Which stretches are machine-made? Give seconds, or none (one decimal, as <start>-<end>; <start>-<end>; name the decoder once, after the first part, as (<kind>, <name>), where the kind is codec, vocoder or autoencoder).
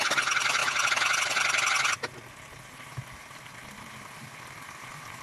none